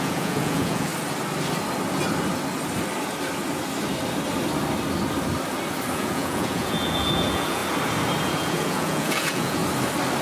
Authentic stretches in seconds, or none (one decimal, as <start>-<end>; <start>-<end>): 0.9-5.9; 7.6-8.2; 9.6-10.2